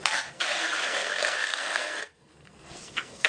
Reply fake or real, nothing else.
fake